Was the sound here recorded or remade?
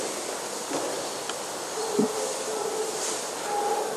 recorded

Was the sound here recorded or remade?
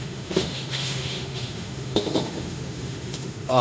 remade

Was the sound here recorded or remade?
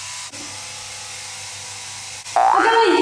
recorded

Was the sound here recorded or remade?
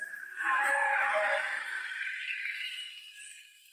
remade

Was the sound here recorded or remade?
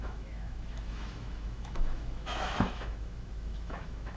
remade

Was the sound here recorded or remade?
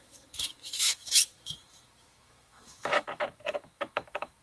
remade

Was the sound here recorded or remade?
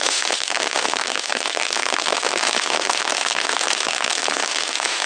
remade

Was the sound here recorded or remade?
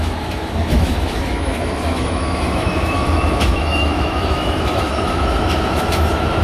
remade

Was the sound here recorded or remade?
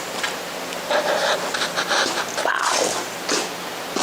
recorded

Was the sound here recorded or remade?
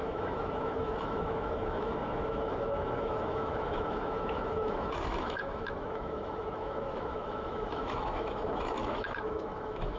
remade